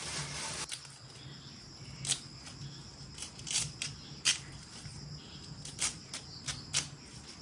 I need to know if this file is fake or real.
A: real